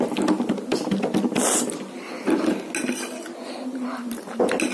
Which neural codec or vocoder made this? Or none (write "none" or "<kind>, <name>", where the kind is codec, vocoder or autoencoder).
none